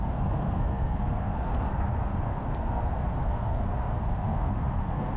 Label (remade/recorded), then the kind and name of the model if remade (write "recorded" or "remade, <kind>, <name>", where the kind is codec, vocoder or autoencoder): remade, codec, SNAC